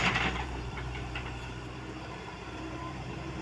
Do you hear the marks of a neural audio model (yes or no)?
yes